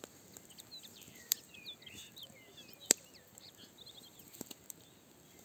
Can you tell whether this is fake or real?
real